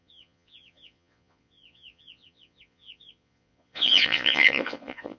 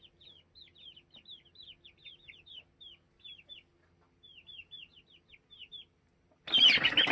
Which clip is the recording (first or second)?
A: second